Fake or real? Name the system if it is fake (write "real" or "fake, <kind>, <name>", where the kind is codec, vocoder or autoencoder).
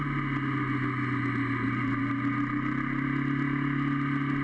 real